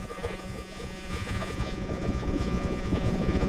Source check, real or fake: fake